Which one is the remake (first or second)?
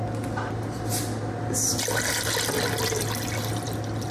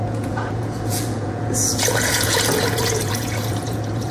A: second